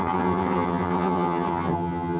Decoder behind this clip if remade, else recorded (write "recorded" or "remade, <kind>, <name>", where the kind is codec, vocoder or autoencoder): remade, vocoder, HiFi-GAN